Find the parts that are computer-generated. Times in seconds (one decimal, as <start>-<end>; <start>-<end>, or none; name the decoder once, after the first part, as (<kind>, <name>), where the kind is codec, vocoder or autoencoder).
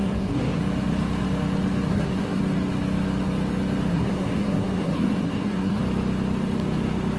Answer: 0.0-0.6 (codec, SNAC); 1.9-2.4; 3.9-5.8